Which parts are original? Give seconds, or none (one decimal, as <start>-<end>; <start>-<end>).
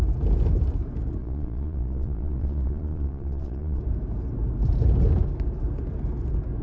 0.0-1.2; 3.8-6.6